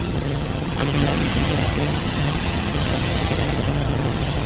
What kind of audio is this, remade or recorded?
remade